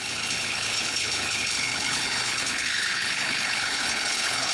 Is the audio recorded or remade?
remade